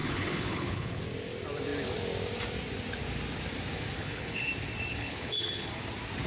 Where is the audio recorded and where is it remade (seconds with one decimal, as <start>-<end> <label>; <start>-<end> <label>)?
0.0-1.0 remade; 1.0-4.0 recorded; 4.0-4.5 remade; 4.5-4.9 recorded; 4.9-5.7 remade; 5.7-6.3 recorded